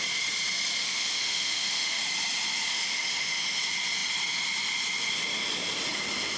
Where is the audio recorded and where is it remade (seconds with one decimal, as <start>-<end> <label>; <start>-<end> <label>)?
0.0-0.8 recorded; 0.8-2.0 remade; 2.0-2.7 recorded; 2.7-3.6 remade; 3.6-6.4 recorded